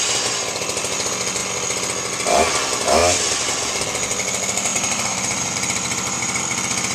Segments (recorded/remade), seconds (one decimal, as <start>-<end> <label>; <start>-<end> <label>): 0.0-4.7 recorded; 4.7-6.4 remade; 6.4-6.9 recorded